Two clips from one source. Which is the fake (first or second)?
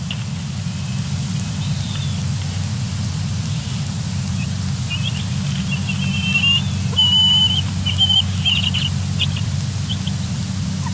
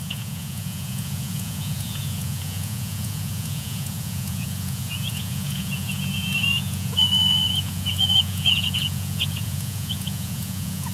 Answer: second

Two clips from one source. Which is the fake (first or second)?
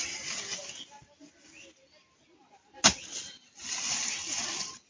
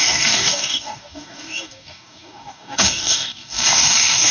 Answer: second